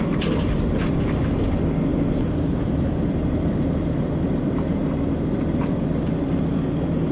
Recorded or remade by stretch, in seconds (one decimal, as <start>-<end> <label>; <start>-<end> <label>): 0.0-1.9 recorded; 1.9-4.8 remade; 4.8-7.1 recorded